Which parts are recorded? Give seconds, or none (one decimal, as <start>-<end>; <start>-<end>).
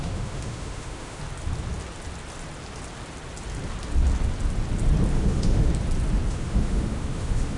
1.2-5.1; 5.7-6.3